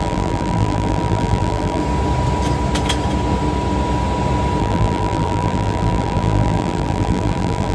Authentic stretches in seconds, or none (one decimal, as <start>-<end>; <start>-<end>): 1.8-4.6